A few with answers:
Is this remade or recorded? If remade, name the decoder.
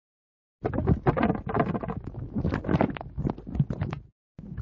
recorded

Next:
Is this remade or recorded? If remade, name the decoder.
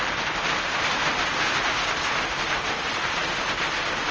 recorded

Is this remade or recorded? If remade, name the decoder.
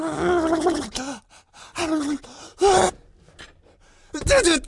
recorded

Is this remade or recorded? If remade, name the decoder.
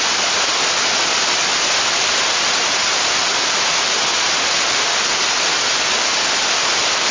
recorded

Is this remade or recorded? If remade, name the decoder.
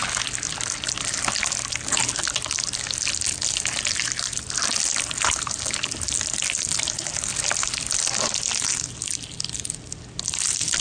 recorded